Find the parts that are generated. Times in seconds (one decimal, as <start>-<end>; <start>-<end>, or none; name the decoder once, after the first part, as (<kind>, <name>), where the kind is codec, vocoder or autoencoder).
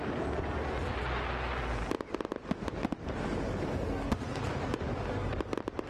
none